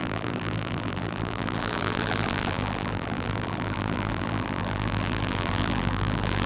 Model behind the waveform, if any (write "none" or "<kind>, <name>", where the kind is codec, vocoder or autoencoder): vocoder, BigVGAN v2